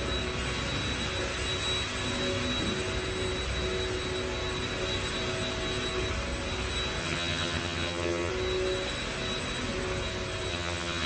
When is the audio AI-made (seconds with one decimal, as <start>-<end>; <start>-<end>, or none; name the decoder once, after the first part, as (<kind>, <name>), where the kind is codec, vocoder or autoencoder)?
7.0-8.3 (vocoder, HiFi-GAN); 10.5-11.1